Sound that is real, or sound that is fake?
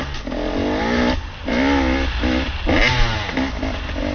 real